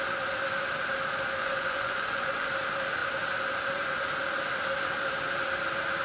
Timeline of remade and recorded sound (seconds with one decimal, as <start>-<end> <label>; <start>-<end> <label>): 0.0-1.4 recorded; 1.4-2.5 remade; 2.5-6.0 recorded